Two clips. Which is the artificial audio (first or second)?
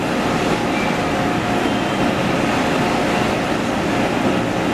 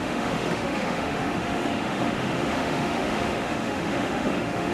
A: second